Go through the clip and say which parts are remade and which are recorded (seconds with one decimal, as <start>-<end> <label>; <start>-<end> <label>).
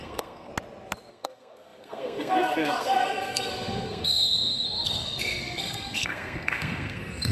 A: 0.0-0.5 remade; 0.5-1.1 recorded; 1.1-7.3 remade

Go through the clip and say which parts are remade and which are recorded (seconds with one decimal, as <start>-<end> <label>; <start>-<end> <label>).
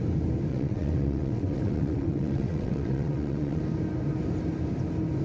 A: 0.0-0.5 recorded; 0.5-3.6 remade; 3.6-5.2 recorded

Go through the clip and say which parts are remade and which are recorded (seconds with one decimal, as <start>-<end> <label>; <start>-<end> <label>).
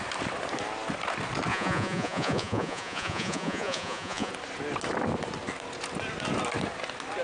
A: 0.0-1.5 recorded; 1.5-4.3 remade; 4.3-7.2 recorded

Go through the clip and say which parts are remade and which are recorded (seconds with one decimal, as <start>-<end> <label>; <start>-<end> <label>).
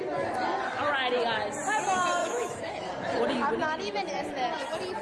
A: 0.0-2.2 recorded; 2.2-2.9 remade; 2.9-5.0 recorded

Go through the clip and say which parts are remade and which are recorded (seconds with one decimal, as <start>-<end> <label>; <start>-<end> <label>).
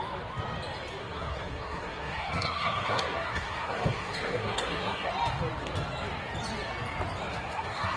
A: 0.0-1.0 recorded; 1.0-5.1 remade; 5.1-7.3 recorded; 7.3-8.0 remade